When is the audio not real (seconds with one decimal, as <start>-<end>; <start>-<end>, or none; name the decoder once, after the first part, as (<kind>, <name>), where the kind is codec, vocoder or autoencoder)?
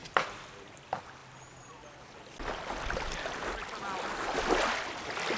none